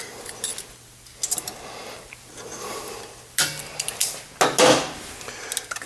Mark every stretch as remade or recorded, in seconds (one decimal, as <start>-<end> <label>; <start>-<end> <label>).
0.0-5.9 recorded